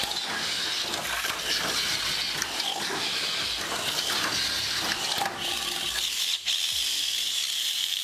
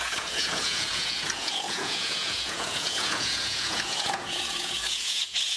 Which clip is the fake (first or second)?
second